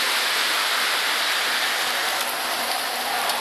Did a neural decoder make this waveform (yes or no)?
yes